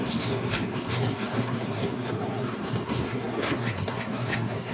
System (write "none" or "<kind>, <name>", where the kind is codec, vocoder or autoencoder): codec, SNAC